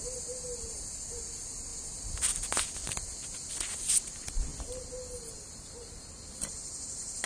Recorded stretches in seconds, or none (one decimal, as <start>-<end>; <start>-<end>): 0.0-7.3